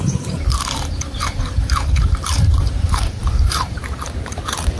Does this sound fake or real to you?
fake